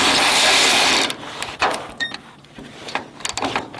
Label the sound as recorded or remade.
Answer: recorded